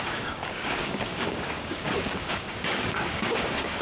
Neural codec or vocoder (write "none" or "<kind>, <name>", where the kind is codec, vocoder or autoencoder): codec, DAC